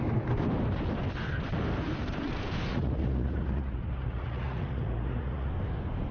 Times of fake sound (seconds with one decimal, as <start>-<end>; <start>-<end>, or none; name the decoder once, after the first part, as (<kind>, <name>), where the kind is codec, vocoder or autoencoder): 2.7-5.5 (vocoder, Vocos)